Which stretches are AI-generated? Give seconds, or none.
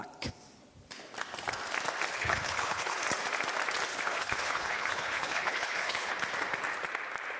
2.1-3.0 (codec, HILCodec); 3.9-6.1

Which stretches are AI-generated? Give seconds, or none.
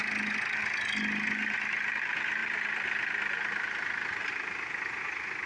none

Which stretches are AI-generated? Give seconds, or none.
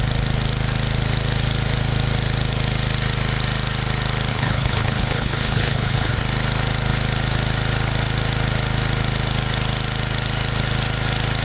4.3-6.1 (codec, HILCodec)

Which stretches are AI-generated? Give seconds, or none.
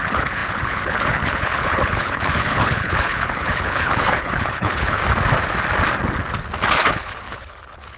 0.0-5.0 (codec, HILCodec); 6.7-8.0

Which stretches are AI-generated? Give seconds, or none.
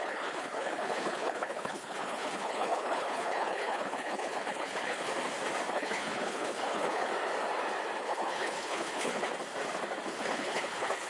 0.0-5.1 (codec, HILCodec); 5.7-7.1; 8.0-9.3; 10.2-11.1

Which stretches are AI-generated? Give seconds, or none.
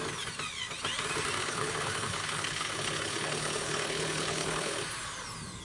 1.4-4.8 (codec, HILCodec)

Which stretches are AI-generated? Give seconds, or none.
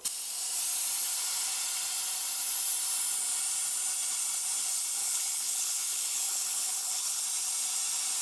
5.0-7.2 (codec, HILCodec)